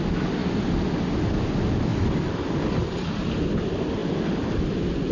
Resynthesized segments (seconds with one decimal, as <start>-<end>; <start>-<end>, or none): none